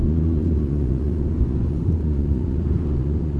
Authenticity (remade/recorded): remade